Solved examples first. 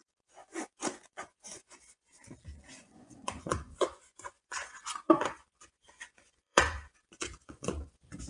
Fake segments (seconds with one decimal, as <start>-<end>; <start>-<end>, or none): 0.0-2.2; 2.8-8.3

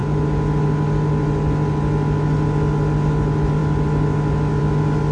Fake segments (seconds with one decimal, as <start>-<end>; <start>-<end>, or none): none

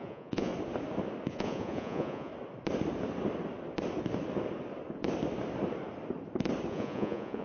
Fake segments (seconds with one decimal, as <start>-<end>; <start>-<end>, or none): 0.0-0.5; 1.3-2.3; 6.7-7.4

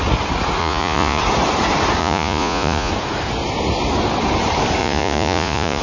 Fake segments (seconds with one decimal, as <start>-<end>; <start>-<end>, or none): 0.6-1.2; 2.0-2.9; 4.8-5.8